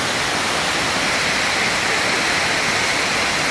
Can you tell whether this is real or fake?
real